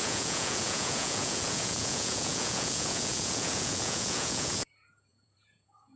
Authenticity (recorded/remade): remade